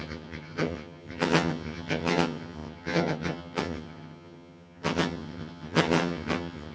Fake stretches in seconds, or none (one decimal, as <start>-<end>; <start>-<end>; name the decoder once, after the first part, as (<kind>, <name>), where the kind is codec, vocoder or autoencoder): 0.0-6.7 (vocoder, HiFi-GAN)